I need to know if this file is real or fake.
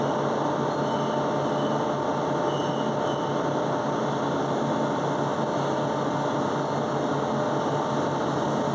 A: real